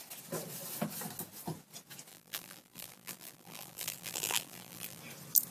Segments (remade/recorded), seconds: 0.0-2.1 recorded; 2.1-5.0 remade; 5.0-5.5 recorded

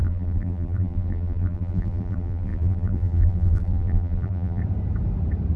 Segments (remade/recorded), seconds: 0.0-4.6 remade; 4.6-5.6 recorded

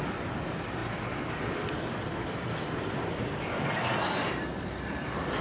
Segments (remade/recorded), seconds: 0.0-4.5 recorded; 4.5-5.4 remade

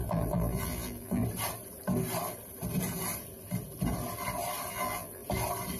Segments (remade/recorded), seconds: 0.0-1.2 remade; 1.2-4.7 recorded; 4.7-5.2 remade; 5.2-5.8 recorded

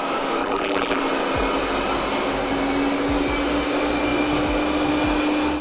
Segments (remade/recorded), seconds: 0.0-0.4 recorded; 0.4-1.0 remade; 1.0-5.6 recorded

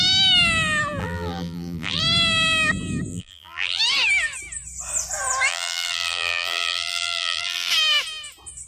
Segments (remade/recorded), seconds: 0.0-1.0 recorded; 1.0-2.0 remade; 2.0-3.1 recorded; 3.1-3.8 remade; 3.8-5.5 recorded; 5.5-7.7 remade; 7.7-8.7 recorded